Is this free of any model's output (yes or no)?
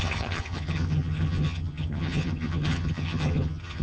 no